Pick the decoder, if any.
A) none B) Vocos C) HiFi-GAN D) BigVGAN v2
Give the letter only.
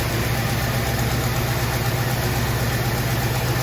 A